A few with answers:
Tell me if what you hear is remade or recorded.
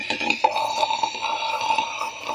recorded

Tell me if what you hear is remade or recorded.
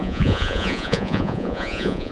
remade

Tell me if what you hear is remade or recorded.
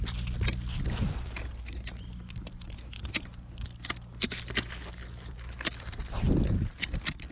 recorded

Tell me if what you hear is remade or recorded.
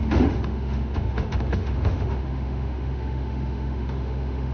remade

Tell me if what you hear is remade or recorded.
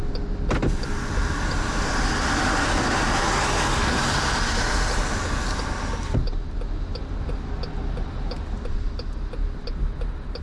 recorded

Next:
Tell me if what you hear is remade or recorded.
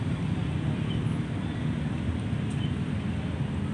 recorded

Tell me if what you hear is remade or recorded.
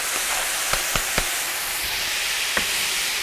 remade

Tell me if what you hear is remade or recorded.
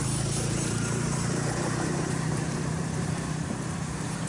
remade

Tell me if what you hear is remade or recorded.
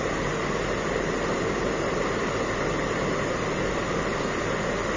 recorded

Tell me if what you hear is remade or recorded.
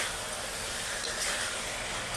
recorded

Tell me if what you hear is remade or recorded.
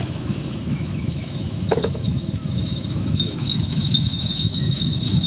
remade